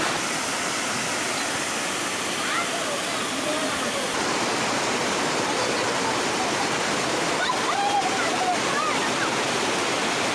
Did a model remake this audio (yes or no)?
no